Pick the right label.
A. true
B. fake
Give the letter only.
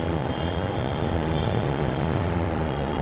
B